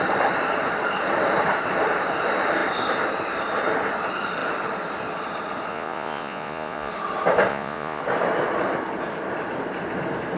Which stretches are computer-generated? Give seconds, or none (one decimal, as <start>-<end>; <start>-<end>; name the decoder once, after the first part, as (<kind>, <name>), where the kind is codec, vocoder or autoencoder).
5.7-6.9 (vocoder, Vocos); 7.5-8.0